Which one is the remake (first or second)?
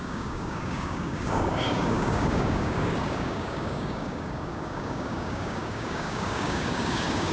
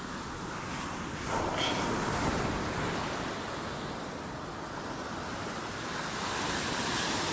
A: first